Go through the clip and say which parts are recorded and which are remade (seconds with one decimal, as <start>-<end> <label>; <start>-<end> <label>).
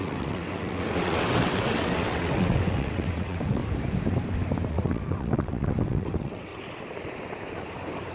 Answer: 0.0-3.6 remade; 3.6-4.7 recorded; 4.7-6.5 remade; 6.5-8.1 recorded